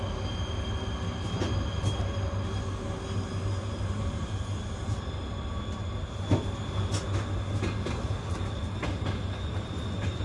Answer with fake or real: real